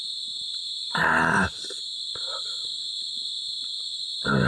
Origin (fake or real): real